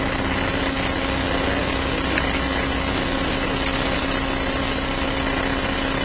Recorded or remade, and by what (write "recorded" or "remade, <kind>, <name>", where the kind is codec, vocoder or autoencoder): recorded